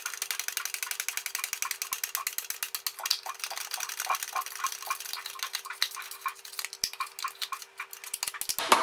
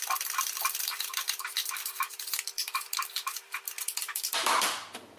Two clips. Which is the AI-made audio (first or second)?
second